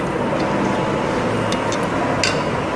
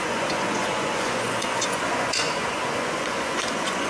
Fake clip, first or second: second